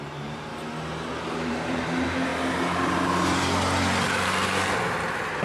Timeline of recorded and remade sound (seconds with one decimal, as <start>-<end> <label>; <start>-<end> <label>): 0.0-0.5 remade; 0.5-1.1 recorded; 1.1-2.3 remade; 2.3-5.4 recorded